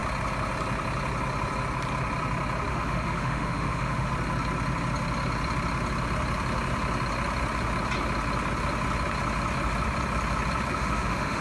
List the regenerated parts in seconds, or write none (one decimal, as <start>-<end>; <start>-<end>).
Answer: 2.7-4.1; 10.7-11.4